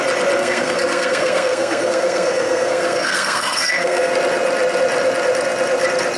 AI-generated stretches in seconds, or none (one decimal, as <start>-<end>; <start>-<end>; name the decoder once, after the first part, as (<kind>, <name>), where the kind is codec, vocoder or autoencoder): 0.4-4.1 (codec, SNAC)